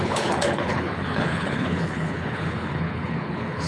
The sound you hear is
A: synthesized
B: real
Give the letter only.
A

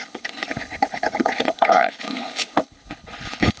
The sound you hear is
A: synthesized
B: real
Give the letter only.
A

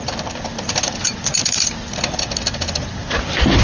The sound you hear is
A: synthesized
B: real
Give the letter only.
B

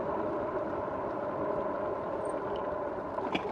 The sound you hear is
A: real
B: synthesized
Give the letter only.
A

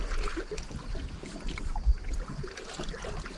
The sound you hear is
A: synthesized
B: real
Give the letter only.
B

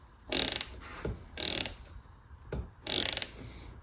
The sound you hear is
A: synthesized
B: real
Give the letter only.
B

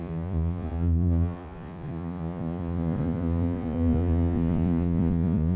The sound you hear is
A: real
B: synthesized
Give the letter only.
B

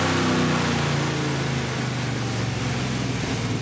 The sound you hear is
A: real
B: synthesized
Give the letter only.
A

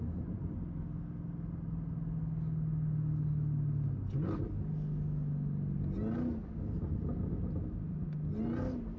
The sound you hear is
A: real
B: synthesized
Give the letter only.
A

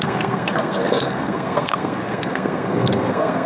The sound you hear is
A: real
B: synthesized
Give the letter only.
B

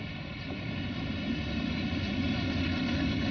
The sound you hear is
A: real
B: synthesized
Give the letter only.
A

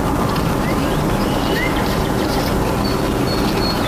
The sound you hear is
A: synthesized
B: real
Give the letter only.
B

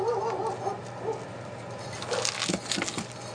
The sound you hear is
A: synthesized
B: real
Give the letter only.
B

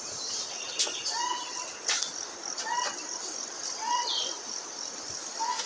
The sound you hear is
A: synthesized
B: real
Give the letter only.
B